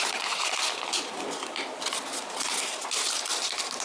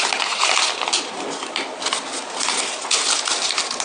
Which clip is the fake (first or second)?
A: first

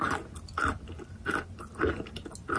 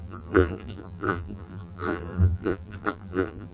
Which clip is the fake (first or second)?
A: second